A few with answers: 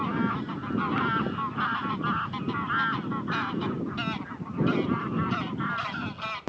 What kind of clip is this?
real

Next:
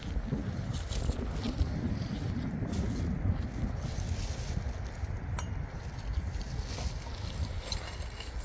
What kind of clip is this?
real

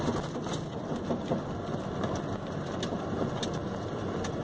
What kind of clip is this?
real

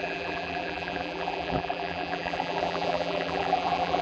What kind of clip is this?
fake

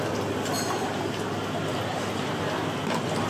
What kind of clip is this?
real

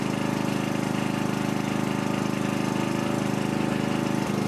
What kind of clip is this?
real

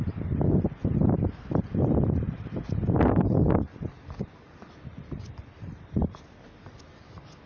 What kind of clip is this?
real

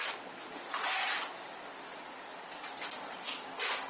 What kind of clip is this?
real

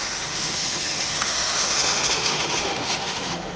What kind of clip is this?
fake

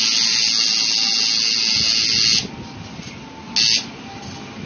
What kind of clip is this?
real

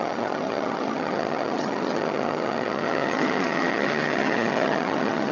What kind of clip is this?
fake